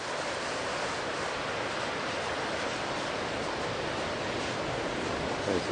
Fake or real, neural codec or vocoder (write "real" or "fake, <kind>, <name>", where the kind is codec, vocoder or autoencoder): fake, vocoder, BigVGAN v2